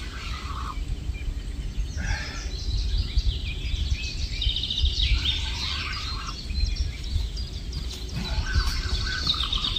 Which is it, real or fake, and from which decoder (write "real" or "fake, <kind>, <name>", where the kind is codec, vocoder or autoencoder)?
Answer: real